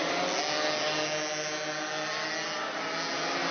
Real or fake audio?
real